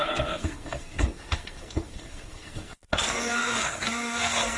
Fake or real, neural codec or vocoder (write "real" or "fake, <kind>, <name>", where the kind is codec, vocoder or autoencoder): fake, codec, SNAC